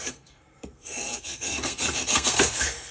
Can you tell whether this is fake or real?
fake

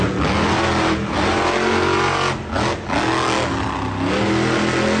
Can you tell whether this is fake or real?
real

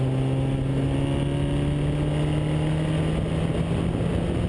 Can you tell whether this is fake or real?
real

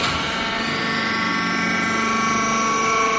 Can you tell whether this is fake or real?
real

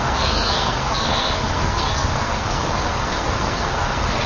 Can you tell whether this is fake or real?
fake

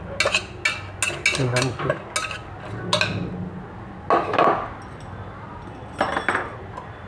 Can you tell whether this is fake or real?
real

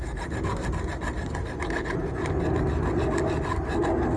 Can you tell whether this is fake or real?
real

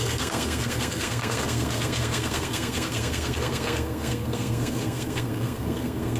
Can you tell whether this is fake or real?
fake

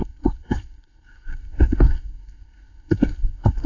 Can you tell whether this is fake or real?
fake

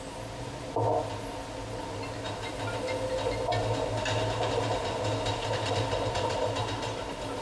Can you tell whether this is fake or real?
real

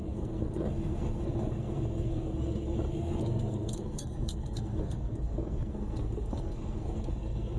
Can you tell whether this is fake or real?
fake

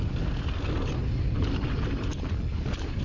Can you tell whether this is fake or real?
real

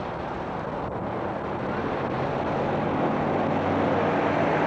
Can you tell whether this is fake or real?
real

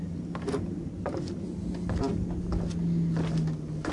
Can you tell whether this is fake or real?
real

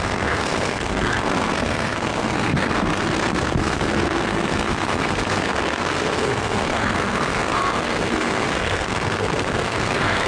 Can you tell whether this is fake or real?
fake